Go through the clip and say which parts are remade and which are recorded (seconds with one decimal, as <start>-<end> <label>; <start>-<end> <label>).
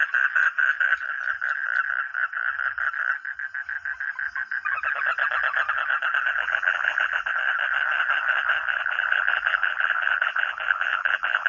0.0-6.4 recorded; 6.4-7.3 remade; 7.3-8.7 recorded; 8.7-11.5 remade